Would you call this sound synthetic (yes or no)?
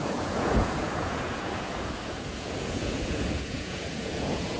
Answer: yes